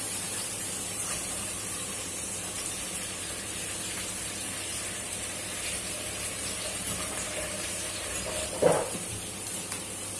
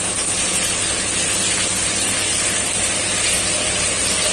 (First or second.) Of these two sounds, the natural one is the second